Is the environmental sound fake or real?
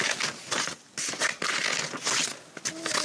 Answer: real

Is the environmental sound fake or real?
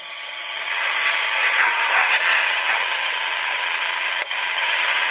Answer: fake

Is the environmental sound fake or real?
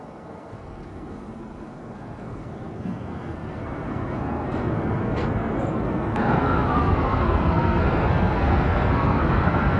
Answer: fake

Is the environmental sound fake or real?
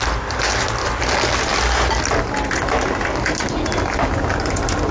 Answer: real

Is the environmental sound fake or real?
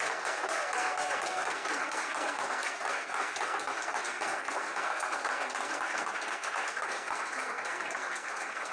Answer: fake